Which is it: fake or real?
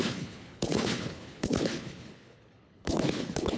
fake